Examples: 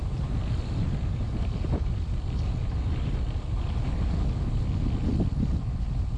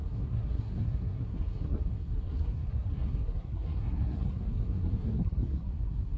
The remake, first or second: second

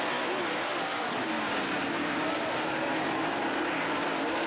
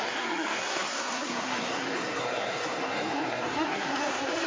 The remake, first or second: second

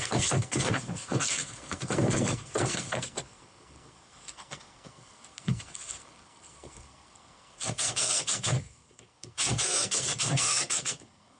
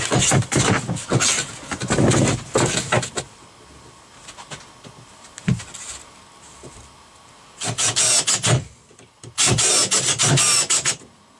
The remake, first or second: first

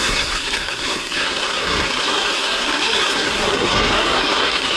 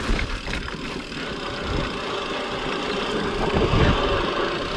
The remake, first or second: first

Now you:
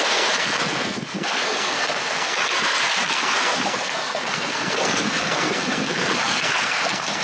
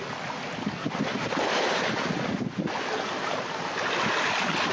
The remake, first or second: first